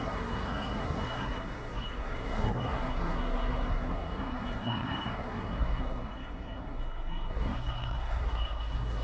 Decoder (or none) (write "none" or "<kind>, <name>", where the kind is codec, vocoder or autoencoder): codec, SNAC